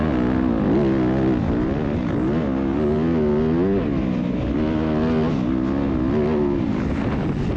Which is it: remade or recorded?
recorded